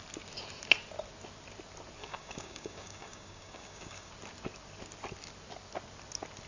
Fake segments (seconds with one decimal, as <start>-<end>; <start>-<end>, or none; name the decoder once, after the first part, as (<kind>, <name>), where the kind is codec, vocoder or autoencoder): 2.0-4.1 (codec, DAC)